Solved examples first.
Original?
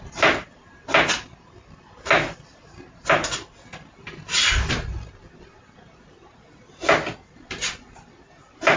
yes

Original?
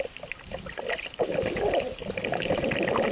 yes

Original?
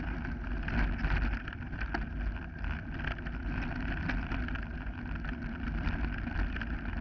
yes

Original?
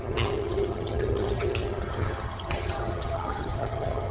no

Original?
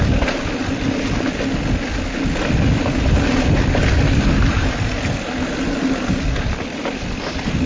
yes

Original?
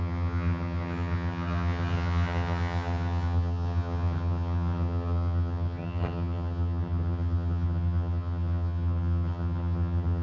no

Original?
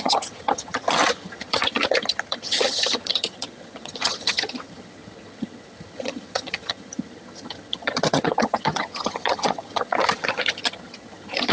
no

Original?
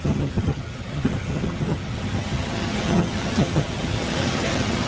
no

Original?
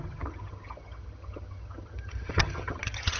no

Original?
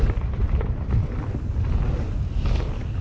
yes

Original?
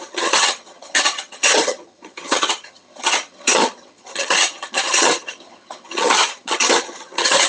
no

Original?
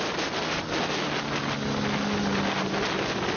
yes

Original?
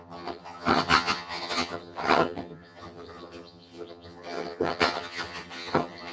no